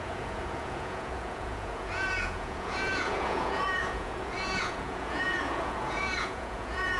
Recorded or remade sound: remade